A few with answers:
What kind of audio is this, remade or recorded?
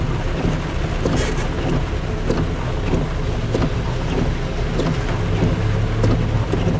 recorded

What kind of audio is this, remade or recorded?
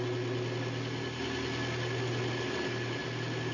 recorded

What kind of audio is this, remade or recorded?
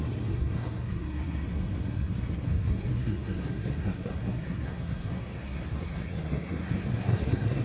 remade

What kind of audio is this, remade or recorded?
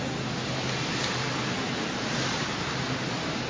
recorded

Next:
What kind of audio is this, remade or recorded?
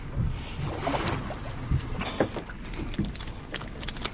recorded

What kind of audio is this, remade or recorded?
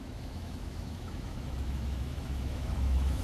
remade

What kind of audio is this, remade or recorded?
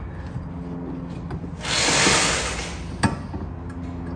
recorded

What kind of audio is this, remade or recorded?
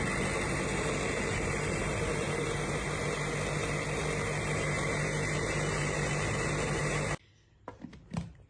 recorded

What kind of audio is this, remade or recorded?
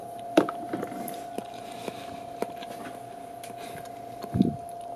recorded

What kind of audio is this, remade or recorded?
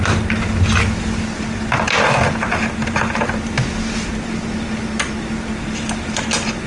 recorded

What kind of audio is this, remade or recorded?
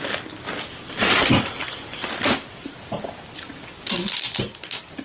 recorded